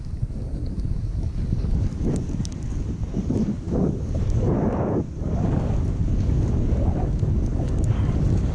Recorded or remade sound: remade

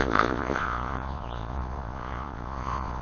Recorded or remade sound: remade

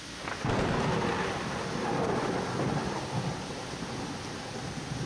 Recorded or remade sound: recorded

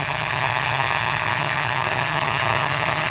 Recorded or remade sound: remade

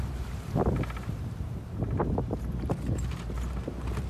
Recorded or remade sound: remade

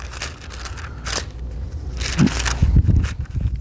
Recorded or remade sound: recorded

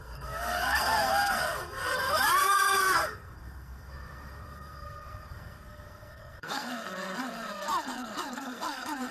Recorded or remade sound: remade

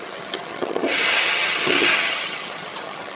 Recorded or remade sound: remade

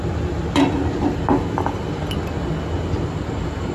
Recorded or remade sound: recorded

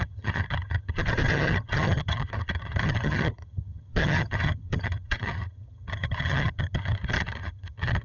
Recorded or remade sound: remade